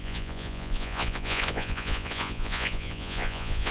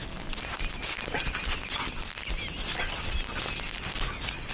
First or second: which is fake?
first